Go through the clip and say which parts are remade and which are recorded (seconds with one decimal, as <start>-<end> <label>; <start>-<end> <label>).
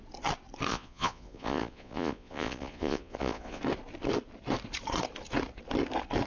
0.0-0.7 recorded; 0.7-3.6 remade; 3.6-6.3 recorded